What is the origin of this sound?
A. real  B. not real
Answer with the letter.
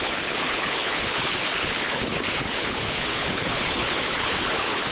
B